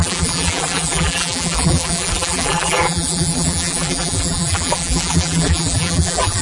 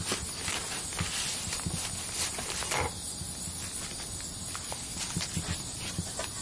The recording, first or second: second